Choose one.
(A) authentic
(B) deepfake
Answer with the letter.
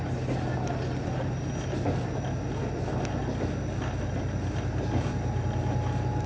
A